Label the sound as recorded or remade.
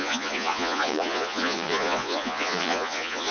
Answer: remade